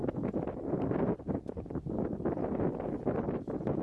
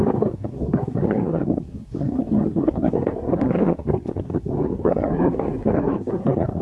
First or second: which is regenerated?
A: second